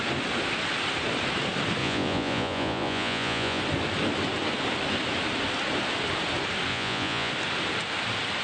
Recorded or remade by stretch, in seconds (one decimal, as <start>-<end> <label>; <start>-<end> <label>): 0.0-1.8 recorded; 1.8-3.6 remade; 3.6-6.7 recorded; 6.7-7.3 remade; 7.3-8.4 recorded